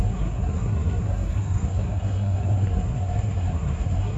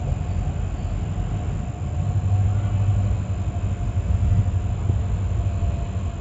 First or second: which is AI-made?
first